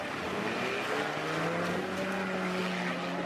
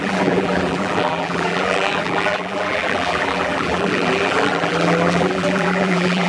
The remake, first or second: second